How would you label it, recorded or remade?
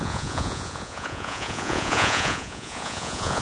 remade